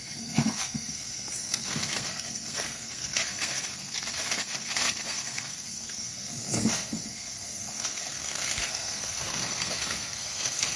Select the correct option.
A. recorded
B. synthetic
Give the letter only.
B